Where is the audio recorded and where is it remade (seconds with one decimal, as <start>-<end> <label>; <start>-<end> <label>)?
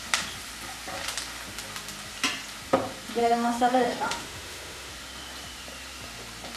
0.0-3.2 recorded; 3.2-4.9 remade; 4.9-6.6 recorded